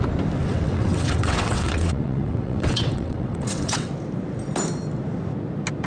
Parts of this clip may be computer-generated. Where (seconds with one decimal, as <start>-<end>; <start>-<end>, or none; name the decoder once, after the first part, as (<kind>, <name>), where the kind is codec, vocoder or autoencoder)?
0.4-3.9 (vocoder, WaveNeXt)